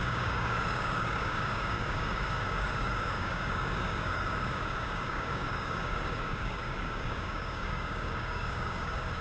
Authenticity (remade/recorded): remade